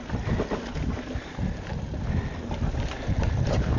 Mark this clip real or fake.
real